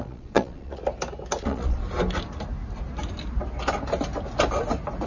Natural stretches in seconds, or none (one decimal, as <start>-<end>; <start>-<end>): 0.8-1.4; 1.8-5.1

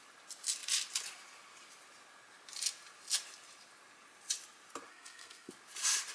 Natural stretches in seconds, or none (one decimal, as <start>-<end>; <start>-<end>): 0.0-4.9; 5.5-6.1

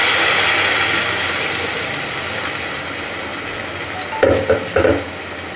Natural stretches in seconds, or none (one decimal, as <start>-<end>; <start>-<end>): 0.0-5.6

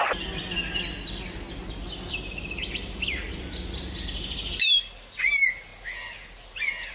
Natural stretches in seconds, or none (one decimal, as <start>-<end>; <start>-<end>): 0.0-6.9